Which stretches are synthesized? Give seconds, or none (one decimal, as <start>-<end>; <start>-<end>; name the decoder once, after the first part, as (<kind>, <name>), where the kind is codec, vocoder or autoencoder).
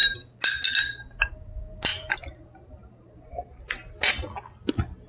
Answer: 1.9-4.1 (vocoder, BigVGAN v2)